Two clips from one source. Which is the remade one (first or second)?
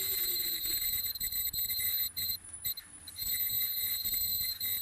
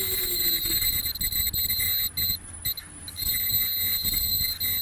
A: first